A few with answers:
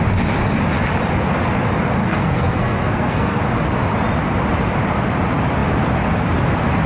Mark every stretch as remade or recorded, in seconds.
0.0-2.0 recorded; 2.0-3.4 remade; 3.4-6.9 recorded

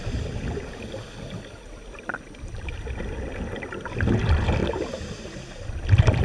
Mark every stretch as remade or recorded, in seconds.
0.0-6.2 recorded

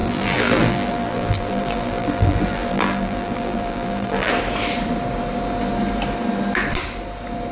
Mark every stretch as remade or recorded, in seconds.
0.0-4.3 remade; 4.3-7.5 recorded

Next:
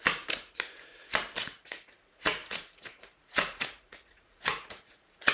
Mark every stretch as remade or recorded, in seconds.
0.0-1.4 recorded; 1.4-5.3 remade